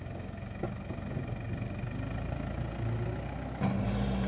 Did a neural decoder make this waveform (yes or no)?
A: no